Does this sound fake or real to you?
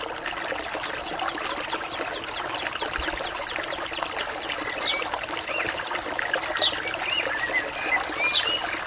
real